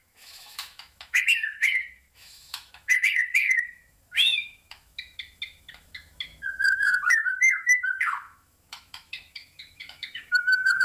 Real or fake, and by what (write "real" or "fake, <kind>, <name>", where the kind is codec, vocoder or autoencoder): fake, autoencoder, DAC-VAE